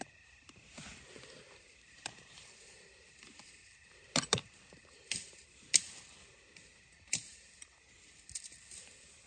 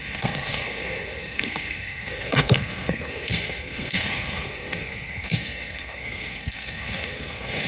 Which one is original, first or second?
first